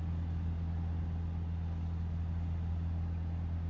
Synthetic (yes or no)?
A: no